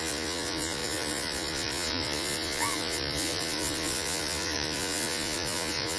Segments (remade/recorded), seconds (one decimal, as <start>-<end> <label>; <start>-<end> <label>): 0.0-6.0 remade